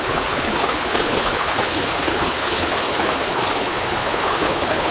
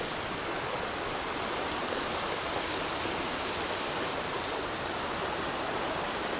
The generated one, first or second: first